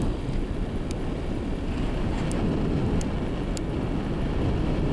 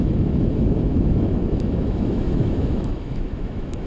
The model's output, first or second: second